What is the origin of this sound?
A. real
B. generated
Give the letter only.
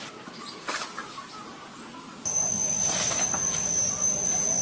A